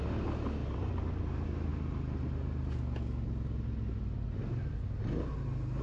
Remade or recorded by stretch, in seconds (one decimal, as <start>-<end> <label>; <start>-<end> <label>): 0.0-5.8 recorded